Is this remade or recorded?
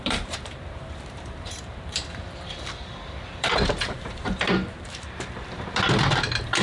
remade